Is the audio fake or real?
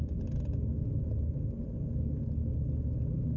real